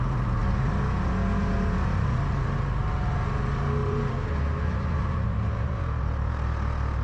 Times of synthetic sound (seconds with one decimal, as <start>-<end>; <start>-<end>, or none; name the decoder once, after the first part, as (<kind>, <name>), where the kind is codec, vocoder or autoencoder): 3.8-6.0 (vocoder, BigVGAN v2)

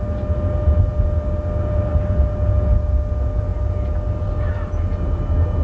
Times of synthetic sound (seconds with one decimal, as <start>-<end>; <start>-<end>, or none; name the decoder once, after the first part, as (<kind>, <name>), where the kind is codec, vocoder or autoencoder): none

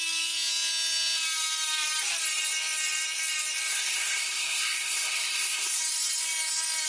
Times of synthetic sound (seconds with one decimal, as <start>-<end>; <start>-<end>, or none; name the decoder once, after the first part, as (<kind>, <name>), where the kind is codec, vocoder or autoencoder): 3.7-5.8 (codec, SNAC)

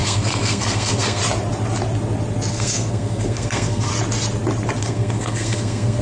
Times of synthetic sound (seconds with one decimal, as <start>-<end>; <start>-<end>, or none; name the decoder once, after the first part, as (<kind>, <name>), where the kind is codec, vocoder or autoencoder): 0.0-1.2 (codec, SNAC); 2.5-3.9; 4.8-6.0